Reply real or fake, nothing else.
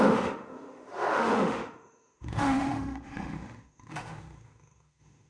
fake